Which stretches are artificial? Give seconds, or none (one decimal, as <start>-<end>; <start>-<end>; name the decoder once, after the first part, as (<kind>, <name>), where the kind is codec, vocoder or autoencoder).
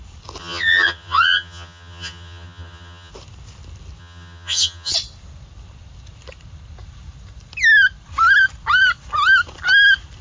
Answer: 0.4-3.1 (vocoder, HiFi-GAN); 4.0-4.9